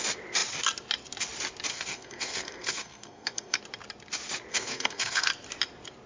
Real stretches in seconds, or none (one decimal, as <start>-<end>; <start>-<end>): 0.0-1.7; 3.6-4.5; 5.3-6.1